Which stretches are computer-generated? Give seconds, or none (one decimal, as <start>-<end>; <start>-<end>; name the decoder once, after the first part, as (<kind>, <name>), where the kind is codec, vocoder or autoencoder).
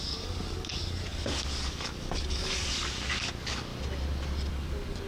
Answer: 0.0-3.7 (codec, DAC); 4.5-5.1